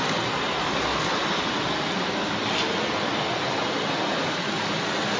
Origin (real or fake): real